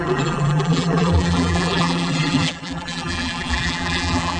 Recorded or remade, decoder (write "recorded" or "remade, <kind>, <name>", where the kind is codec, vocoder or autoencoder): remade, vocoder, BigVGAN v2